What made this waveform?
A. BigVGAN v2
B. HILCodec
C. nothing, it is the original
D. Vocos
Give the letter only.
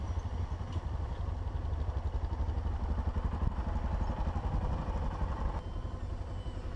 C